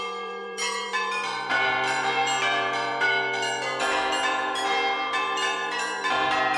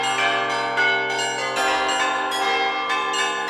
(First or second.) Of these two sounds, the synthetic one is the first